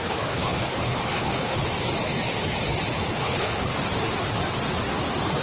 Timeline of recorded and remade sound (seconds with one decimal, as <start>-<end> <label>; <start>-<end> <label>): 0.0-1.7 remade; 1.7-3.1 recorded; 3.1-3.7 remade; 3.7-5.4 recorded